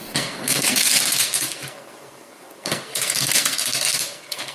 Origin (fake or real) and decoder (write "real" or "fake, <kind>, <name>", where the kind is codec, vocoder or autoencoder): fake, codec, SNAC